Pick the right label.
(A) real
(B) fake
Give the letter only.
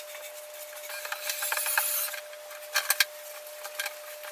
A